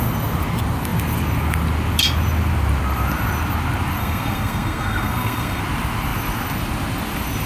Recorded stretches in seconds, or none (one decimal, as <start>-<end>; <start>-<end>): 0.0-4.0; 5.6-7.5